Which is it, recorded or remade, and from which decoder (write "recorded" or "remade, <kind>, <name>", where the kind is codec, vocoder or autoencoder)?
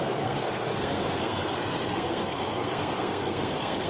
remade, codec, SNAC